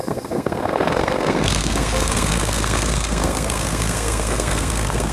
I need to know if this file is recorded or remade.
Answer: remade